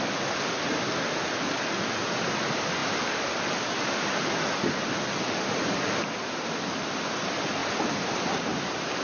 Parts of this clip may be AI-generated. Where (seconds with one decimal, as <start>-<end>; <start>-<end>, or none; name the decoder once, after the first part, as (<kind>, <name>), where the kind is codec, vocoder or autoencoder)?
none